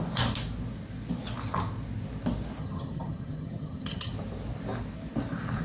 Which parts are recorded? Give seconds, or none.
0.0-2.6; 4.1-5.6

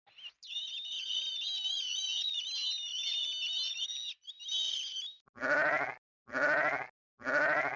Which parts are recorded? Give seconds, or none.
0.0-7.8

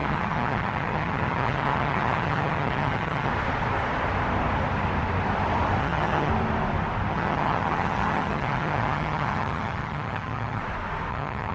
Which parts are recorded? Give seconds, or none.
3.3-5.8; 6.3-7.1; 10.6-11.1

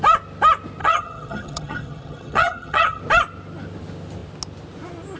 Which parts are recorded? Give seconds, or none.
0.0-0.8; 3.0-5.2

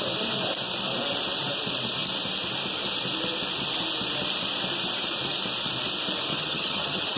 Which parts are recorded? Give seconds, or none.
0.0-6.3